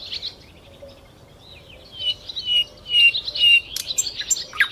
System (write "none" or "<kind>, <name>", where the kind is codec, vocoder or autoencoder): none